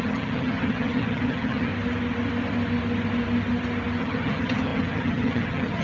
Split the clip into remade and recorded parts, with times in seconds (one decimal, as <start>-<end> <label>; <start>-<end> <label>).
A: 0.0-1.7 remade; 1.7-4.0 recorded; 4.0-5.8 remade

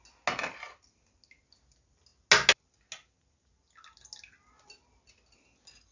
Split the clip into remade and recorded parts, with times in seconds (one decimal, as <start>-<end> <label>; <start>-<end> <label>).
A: 0.0-5.9 recorded

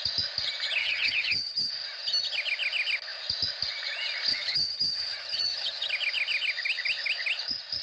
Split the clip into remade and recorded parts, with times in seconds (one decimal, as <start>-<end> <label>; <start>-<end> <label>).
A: 0.0-0.8 recorded; 0.8-1.7 remade; 1.7-4.3 recorded; 4.3-5.9 remade; 5.9-7.8 recorded

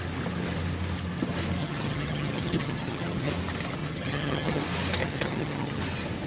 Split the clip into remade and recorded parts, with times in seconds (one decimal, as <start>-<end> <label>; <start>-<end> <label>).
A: 0.0-1.6 recorded; 1.6-3.3 remade; 3.3-3.8 recorded; 3.8-4.6 remade; 4.6-5.0 recorded; 5.0-5.8 remade; 5.8-6.3 recorded

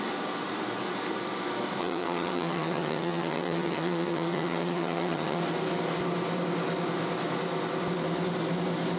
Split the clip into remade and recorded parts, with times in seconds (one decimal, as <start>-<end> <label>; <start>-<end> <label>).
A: 0.0-1.8 recorded; 1.8-5.4 remade; 5.4-9.0 recorded

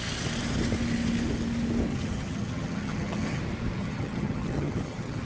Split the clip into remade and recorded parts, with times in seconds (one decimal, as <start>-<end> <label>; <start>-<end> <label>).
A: 0.0-1.9 recorded; 1.9-3.4 remade; 3.4-3.8 recorded; 3.8-5.3 remade